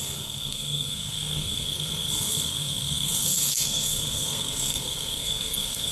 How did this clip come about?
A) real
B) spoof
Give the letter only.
B